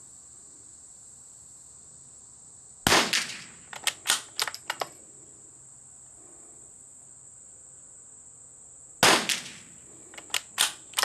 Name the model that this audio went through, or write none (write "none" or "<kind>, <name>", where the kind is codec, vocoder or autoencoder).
none